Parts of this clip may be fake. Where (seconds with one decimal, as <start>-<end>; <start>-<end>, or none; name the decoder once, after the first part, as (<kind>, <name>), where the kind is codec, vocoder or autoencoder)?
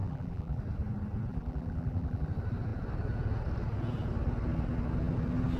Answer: 0.0-0.6 (vocoder, BigVGAN v2); 1.3-2.3